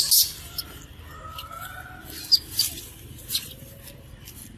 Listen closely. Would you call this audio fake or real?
real